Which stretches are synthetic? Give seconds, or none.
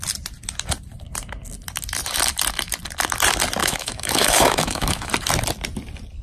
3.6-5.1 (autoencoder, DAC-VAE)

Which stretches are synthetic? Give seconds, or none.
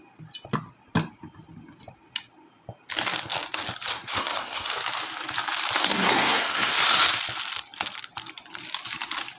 3.9-4.7 (codec, SNAC); 5.8-6.7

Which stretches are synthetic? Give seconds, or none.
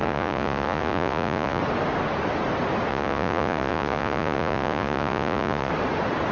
0.0-1.6 (vocoder, Vocos); 2.9-5.7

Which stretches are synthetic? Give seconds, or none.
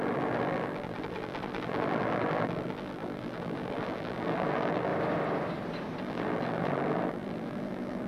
0.0-4.9 (vocoder, BigVGAN v2); 6.0-8.1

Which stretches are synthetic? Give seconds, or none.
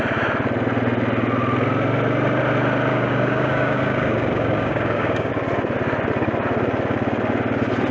2.9-5.3 (codec, DAC)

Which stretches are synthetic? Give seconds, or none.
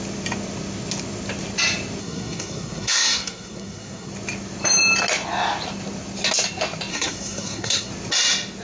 2.0-4.1 (codec, SNAC); 6.9-7.9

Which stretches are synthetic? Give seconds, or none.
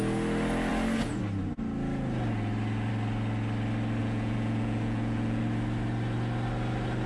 4.0-5.4 (vocoder, Vocos)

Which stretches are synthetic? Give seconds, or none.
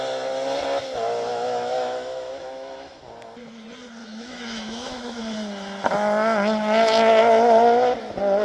1.3-3.0 (autoencoder, DAC-VAE); 4.0-5.2